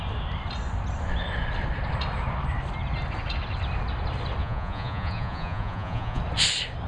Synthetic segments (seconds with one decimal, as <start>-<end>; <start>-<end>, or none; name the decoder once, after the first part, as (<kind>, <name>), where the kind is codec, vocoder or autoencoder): 4.4-6.2 (vocoder, Vocos)